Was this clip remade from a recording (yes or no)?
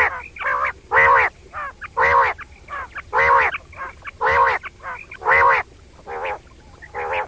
no